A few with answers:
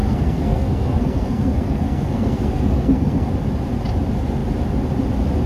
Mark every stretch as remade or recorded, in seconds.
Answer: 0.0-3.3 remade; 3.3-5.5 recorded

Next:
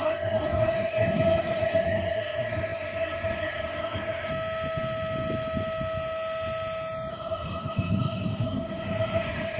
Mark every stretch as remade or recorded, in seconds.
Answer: 0.0-4.3 remade; 4.3-7.1 recorded; 7.1-9.6 remade

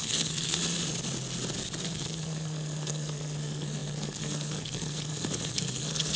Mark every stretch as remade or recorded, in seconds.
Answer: 0.0-0.6 remade; 0.6-1.8 recorded; 1.8-6.2 remade

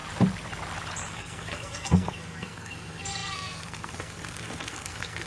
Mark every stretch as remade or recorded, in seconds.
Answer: 0.0-1.1 recorded; 1.1-5.3 remade

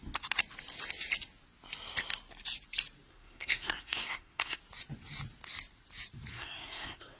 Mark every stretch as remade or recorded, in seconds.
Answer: 0.0-3.1 recorded; 3.1-4.6 remade; 4.6-6.3 recorded; 6.3-7.2 remade

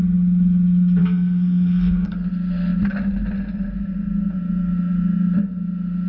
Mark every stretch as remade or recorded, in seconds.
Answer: 0.0-1.0 recorded; 1.0-2.3 remade; 2.3-6.1 recorded

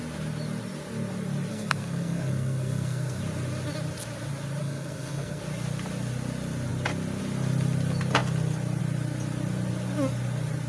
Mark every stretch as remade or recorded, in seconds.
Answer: 0.0-1.5 recorded; 1.5-3.2 remade; 3.2-4.6 recorded; 4.6-5.4 remade; 5.4-10.7 recorded